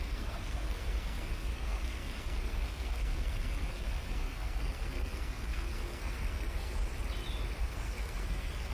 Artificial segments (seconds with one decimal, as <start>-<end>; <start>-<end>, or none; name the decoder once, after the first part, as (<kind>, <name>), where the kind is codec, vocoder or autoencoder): 0.0-6.9 (codec, SNAC); 7.6-8.7